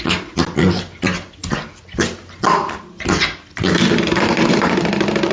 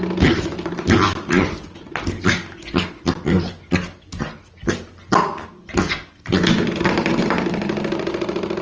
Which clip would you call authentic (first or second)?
second